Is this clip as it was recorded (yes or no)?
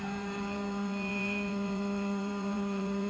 no